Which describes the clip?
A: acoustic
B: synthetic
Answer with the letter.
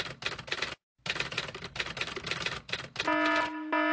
A